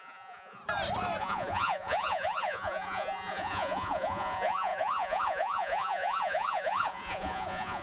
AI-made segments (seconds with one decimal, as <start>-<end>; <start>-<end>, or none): 0.0-0.6; 1.2-7.8